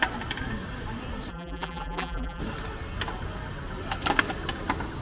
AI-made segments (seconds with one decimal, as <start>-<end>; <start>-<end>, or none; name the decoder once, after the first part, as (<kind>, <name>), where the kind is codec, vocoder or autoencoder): 1.3-2.4 (vocoder, BigVGAN v2)